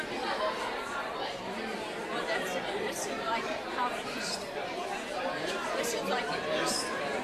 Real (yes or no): no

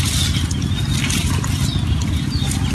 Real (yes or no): yes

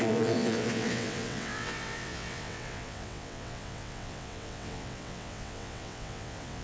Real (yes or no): no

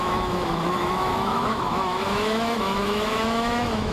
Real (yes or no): no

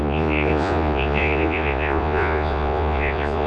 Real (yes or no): no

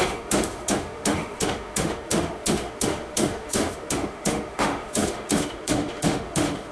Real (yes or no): no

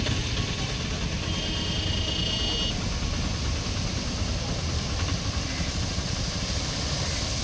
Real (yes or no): yes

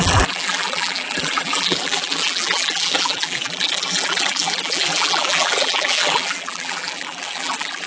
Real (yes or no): no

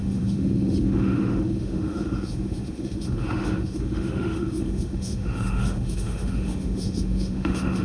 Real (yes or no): no